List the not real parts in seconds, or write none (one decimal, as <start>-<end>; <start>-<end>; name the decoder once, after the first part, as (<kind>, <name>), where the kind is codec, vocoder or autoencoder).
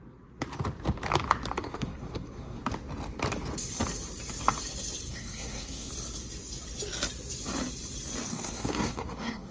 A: 1.6-2.6 (codec, SNAC); 5.1-5.9; 8.3-9.5